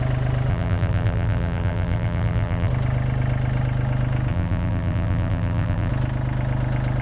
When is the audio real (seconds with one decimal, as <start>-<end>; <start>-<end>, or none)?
0.0-0.5; 2.7-4.3; 5.9-7.0